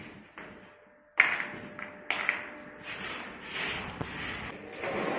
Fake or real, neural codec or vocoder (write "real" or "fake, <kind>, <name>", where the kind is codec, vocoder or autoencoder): real